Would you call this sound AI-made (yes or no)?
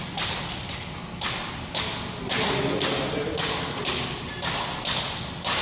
no